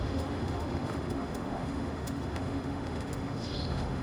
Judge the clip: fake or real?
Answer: fake